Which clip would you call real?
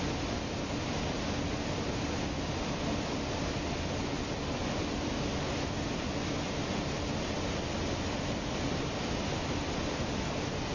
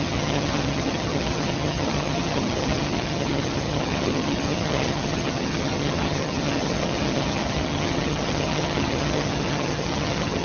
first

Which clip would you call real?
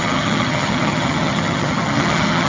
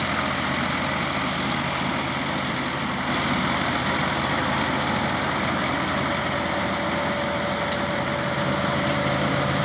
second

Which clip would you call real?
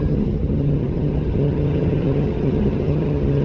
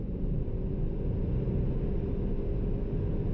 second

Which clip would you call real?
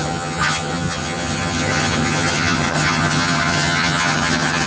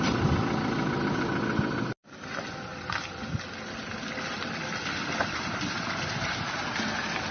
second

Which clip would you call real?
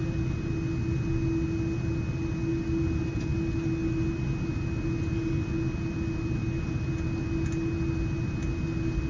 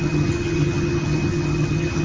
first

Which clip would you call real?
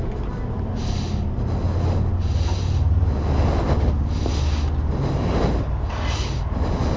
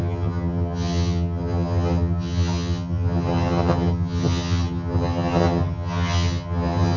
first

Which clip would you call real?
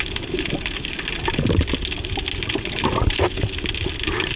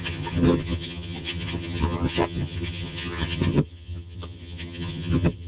first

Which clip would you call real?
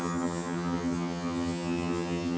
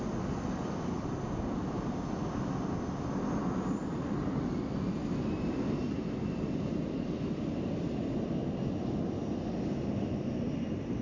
second